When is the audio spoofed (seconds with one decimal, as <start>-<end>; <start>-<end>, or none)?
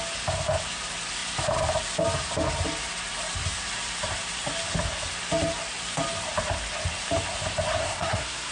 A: 7.8-8.5